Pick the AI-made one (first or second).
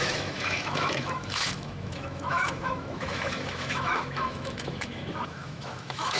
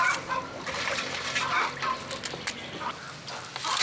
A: first